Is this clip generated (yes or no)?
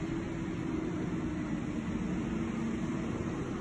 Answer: no